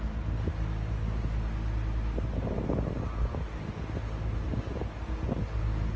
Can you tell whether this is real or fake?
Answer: real